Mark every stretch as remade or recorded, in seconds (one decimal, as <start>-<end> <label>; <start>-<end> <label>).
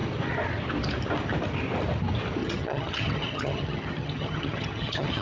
0.0-2.4 recorded; 2.4-5.2 remade